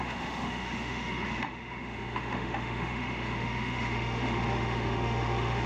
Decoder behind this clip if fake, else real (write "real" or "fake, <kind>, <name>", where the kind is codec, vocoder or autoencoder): fake, autoencoder, DAC-VAE